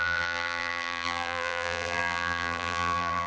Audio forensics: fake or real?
fake